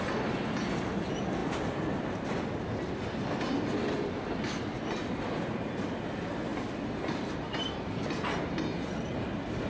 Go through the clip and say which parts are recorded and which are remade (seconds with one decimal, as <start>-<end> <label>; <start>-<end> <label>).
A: 0.0-9.7 recorded